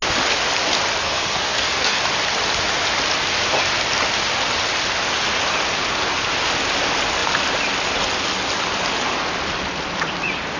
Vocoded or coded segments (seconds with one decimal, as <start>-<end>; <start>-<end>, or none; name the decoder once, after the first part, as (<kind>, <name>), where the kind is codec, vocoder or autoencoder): 1.0-2.0 (codec, SNAC)